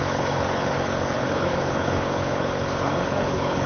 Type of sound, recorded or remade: remade